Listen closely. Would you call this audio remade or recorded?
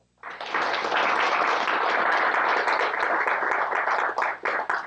recorded